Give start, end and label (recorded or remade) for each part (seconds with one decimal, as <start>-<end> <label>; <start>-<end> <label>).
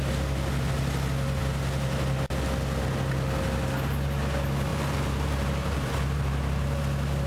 0.0-4.7 recorded; 4.7-6.8 remade; 6.8-7.3 recorded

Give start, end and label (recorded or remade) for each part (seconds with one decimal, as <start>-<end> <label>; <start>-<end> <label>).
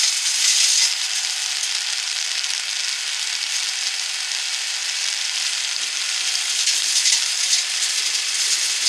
0.0-8.9 recorded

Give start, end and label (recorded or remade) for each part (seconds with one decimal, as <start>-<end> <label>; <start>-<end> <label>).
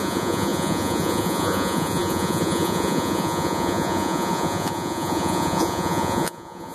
0.0-6.7 remade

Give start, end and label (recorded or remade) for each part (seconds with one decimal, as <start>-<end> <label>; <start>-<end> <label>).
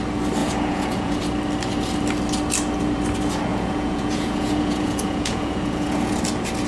0.0-0.4 recorded; 0.4-1.2 remade; 1.2-3.5 recorded; 3.5-6.1 remade; 6.1-6.7 recorded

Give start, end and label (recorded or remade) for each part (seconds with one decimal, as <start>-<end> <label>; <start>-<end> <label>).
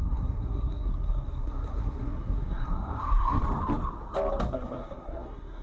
0.0-3.4 remade; 3.4-4.5 recorded; 4.5-5.6 remade